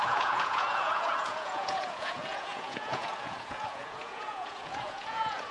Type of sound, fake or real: fake